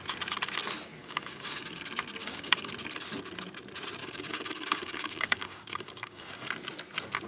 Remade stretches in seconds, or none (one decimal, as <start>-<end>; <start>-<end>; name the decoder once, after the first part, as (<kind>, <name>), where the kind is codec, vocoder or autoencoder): 1.0-1.8 (codec, DAC); 2.2-2.7; 4.0-6.5